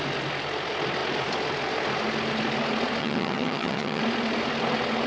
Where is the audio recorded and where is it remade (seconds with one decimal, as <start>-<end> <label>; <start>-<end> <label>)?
0.0-3.0 recorded; 3.0-4.0 remade; 4.0-5.1 recorded